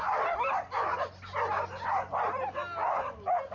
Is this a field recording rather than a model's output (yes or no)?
yes